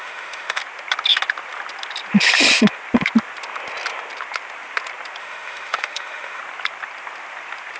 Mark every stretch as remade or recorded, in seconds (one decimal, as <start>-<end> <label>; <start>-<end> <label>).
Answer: 0.0-0.6 remade; 0.6-5.2 recorded; 5.2-6.4 remade; 6.4-7.8 recorded